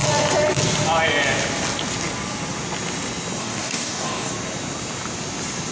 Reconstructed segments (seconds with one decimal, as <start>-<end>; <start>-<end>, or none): 3.4-4.3

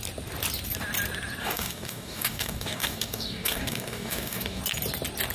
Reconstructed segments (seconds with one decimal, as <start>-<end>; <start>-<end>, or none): 1.4-4.6

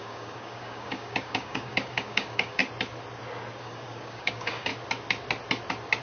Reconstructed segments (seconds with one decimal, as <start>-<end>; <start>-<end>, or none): 0.0-2.6; 3.6-4.7